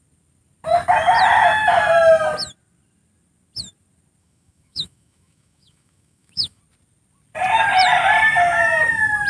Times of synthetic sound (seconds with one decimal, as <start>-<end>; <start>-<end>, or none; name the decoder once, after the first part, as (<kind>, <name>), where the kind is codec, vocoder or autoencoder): 4.2-6.6 (autoencoder, DAC-VAE)